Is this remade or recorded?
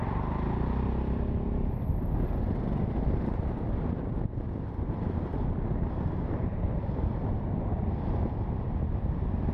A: recorded